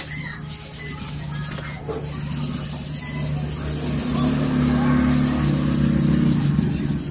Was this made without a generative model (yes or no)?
yes